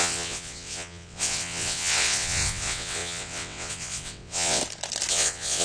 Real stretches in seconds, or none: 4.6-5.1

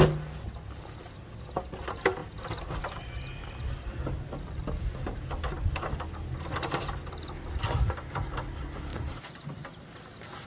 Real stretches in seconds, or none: 0.0-10.5